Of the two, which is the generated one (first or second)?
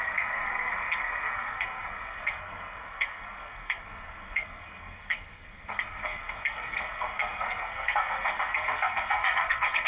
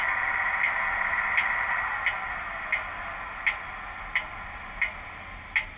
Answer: first